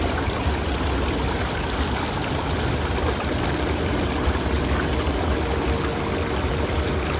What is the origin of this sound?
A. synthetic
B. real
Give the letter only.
B